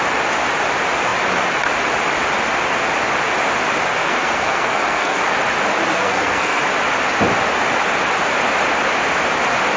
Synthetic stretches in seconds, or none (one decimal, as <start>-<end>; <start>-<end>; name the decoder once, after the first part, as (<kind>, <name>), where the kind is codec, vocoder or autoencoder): 4.0-5.2 (codec, SNAC); 5.9-6.6